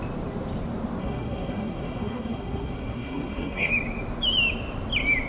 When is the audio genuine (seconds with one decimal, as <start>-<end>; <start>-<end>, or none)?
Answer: 0.0-1.0; 3.7-5.3